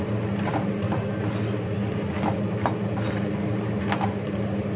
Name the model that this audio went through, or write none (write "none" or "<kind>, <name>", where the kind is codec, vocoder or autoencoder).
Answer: none